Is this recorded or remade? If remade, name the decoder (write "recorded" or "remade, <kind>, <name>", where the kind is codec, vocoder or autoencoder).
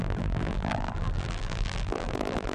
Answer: remade, vocoder, BigVGAN v2